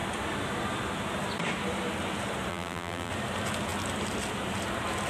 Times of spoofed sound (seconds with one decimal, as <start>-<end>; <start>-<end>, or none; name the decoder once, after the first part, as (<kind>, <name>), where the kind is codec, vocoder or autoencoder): 2.5-3.1 (vocoder, BigVGAN v2)

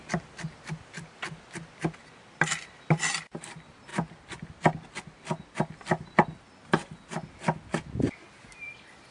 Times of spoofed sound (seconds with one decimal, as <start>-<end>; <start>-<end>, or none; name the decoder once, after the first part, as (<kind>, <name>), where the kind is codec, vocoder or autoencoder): 0.0-3.9 (vocoder, BigVGAN v2)